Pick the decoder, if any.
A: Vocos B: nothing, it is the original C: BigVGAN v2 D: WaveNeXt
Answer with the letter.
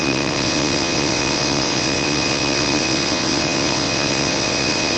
D